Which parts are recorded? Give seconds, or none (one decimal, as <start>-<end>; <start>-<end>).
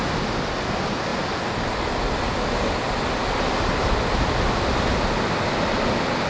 0.0-6.3